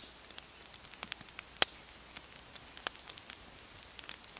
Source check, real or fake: real